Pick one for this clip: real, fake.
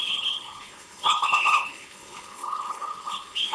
fake